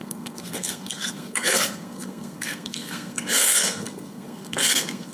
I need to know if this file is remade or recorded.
remade